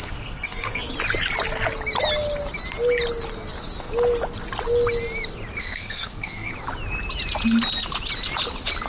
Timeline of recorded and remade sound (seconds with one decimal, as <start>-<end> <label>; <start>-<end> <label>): 0.0-0.9 remade; 0.9-5.6 recorded; 5.6-6.5 remade; 6.5-8.9 recorded